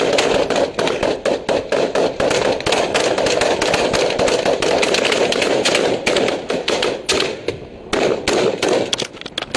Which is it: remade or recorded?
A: recorded